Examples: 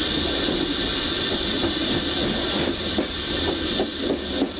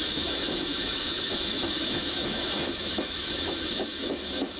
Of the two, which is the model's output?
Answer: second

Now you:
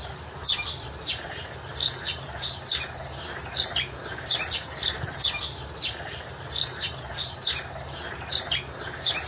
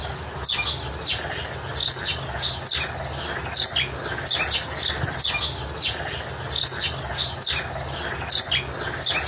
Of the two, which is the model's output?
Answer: first